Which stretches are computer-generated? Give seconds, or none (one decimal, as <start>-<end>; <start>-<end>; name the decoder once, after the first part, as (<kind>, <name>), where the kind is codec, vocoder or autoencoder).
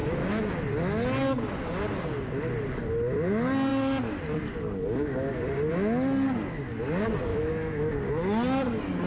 0.0-0.5 (autoencoder, DAC-VAE); 7.3-7.9